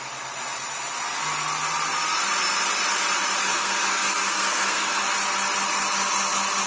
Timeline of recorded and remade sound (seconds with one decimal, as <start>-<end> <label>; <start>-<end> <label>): 0.0-3.5 recorded; 3.5-5.0 remade; 5.0-6.7 recorded